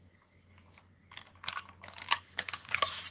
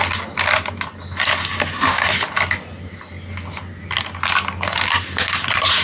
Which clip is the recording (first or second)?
second